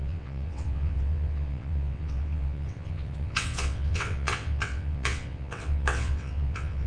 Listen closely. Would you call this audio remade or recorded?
remade